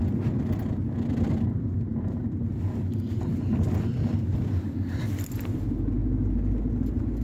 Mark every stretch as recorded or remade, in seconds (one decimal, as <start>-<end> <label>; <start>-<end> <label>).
0.0-7.2 recorded